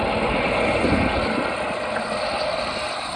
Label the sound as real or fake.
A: real